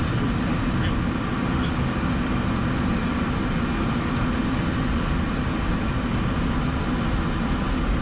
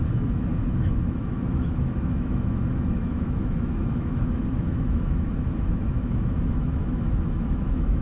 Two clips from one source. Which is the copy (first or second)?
second